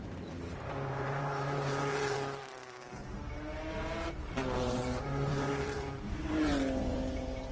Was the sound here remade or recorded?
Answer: remade